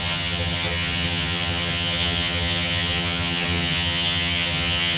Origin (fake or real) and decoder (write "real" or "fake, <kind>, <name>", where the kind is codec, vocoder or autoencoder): fake, vocoder, HiFi-GAN